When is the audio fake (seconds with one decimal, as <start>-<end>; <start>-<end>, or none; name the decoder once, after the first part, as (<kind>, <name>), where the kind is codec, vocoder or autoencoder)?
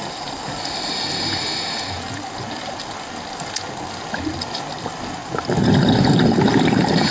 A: none